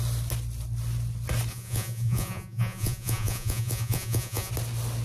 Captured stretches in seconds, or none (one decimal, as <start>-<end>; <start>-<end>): 0.0-1.5; 4.5-5.0